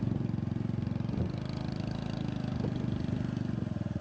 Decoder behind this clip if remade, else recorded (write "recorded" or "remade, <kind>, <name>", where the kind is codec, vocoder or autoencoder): recorded